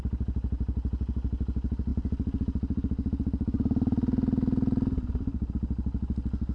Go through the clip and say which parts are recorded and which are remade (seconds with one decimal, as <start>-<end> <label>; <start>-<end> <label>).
0.0-6.5 recorded

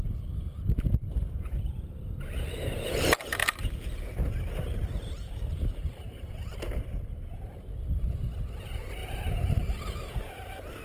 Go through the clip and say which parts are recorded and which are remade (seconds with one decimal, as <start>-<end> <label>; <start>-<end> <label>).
0.0-0.5 recorded; 0.5-2.1 remade; 2.1-3.4 recorded; 3.4-6.3 remade; 6.3-9.0 recorded; 9.0-10.8 remade

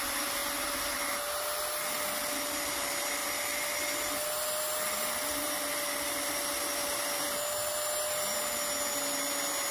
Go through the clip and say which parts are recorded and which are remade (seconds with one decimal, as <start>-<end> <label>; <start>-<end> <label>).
0.0-9.7 recorded

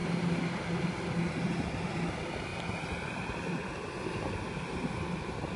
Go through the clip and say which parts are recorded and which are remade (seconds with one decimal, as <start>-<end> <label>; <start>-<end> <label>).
0.0-5.6 recorded

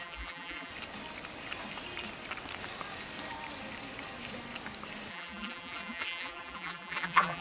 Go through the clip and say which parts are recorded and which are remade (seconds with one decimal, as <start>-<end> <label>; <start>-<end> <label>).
0.0-0.7 remade; 0.7-5.1 recorded; 5.1-7.4 remade

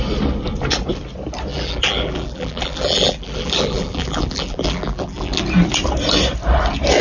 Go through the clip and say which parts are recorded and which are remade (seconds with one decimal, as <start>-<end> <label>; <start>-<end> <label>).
0.0-1.5 recorded; 1.5-5.4 remade; 5.4-7.0 recorded